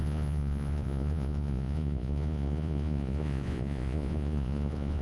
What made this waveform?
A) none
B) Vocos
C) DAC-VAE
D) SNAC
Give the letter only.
B